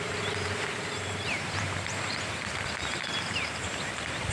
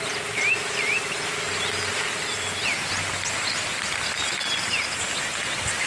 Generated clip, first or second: first